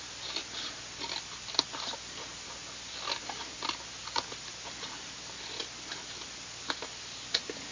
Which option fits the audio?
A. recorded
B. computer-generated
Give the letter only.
A